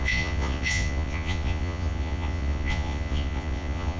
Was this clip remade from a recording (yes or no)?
yes